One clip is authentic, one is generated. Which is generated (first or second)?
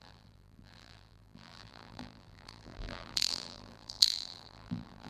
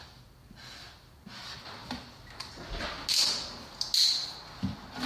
first